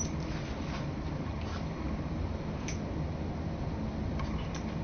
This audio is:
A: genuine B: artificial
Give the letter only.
A